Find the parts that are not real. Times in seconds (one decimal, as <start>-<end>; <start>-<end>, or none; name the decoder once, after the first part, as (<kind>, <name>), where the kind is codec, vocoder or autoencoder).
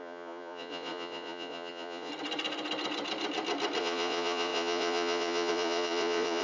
0.0-2.1 (vocoder, Vocos); 3.8-6.4